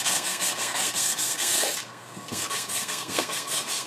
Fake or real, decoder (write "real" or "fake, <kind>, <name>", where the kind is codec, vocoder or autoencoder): fake, codec, SNAC